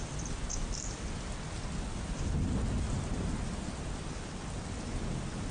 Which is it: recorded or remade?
recorded